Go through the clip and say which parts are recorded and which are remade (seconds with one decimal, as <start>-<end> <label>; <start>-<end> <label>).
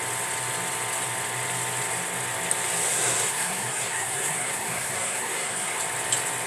0.0-2.9 recorded; 2.9-5.8 remade; 5.8-6.5 recorded